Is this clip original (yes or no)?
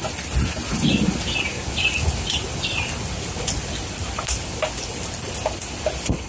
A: yes